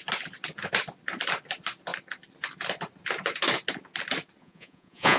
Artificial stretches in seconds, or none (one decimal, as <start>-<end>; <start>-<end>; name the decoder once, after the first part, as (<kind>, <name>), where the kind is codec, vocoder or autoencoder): 4.4-5.2 (vocoder, Vocos)